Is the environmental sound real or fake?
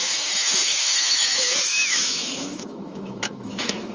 fake